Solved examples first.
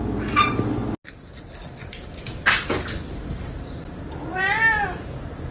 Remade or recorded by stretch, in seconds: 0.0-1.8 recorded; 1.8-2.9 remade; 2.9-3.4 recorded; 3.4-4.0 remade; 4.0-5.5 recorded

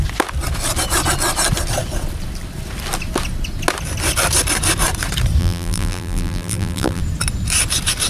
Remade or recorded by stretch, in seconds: 0.0-5.4 recorded; 5.4-7.0 remade; 7.0-8.1 recorded

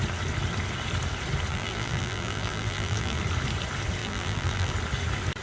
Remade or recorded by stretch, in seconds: 0.0-1.5 recorded; 1.5-3.2 remade; 3.2-4.0 recorded; 4.0-4.7 remade; 4.7-5.4 recorded

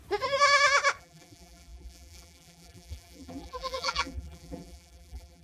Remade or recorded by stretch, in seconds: 0.0-1.0 recorded; 1.0-5.4 remade

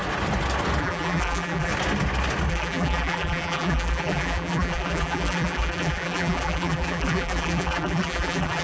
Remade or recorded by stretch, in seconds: 0.0-0.8 recorded; 0.8-1.7 remade; 1.7-2.5 recorded; 2.5-8.6 remade

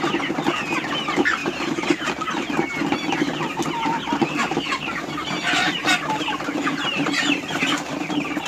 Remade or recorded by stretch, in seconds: 0.0-1.4 recorded; 1.4-2.7 remade; 2.7-3.3 recorded; 3.3-7.5 remade; 7.5-8.5 recorded

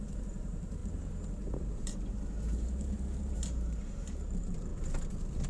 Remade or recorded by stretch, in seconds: 0.0-4.7 remade; 4.7-5.5 recorded

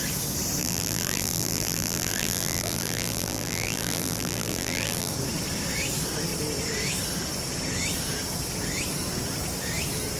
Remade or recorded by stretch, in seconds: 0.0-0.6 recorded; 0.6-5.1 remade; 5.1-10.2 recorded